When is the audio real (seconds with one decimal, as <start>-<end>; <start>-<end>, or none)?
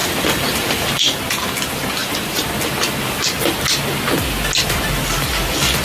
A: 1.2-2.0; 2.5-5.8